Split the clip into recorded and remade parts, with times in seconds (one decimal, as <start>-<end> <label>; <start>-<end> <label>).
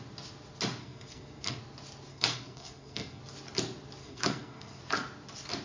0.0-0.8 recorded; 0.8-1.6 remade; 1.6-2.1 recorded; 2.1-3.2 remade; 3.2-4.0 recorded; 4.0-4.8 remade; 4.8-5.6 recorded